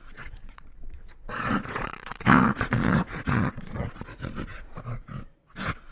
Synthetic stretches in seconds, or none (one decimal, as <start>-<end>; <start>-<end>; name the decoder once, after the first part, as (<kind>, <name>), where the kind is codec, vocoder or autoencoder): 0.0-5.9 (vocoder, Vocos)